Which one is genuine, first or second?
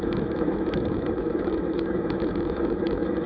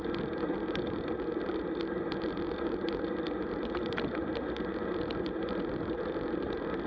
second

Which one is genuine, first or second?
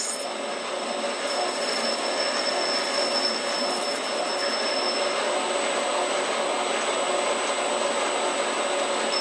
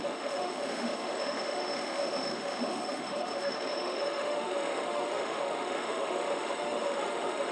first